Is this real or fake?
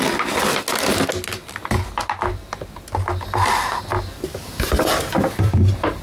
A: real